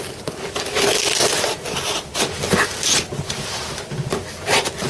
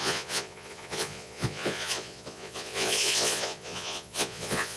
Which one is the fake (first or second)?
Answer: second